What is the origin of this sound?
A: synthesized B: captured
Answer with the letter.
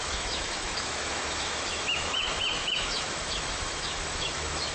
A